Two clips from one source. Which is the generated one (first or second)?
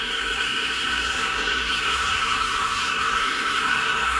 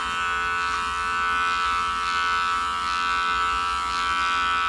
first